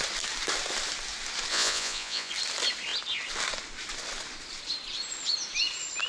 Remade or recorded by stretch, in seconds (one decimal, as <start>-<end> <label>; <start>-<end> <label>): 0.0-1.5 recorded; 1.5-2.3 remade; 2.3-6.1 recorded